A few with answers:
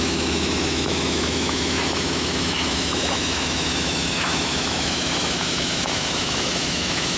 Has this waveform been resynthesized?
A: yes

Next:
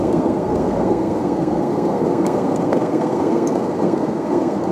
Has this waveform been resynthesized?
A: yes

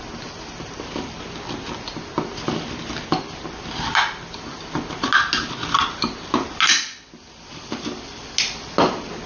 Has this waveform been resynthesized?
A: no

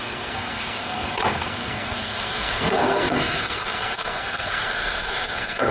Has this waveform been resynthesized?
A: yes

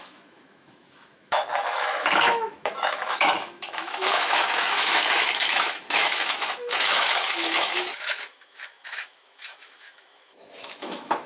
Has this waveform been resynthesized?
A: yes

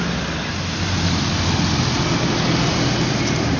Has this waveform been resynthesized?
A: no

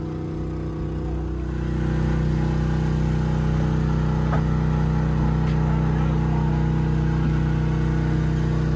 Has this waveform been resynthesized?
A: no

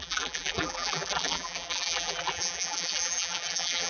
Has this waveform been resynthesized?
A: yes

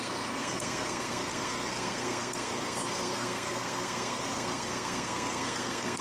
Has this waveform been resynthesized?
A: yes